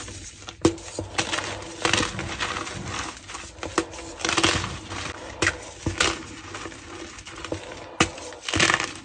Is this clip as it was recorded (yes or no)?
yes